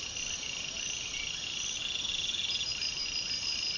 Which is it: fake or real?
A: real